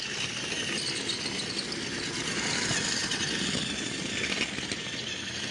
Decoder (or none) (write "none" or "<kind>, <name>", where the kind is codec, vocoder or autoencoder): none